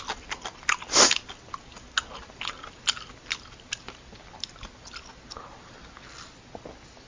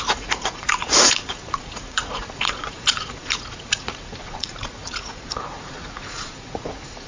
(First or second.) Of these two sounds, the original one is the first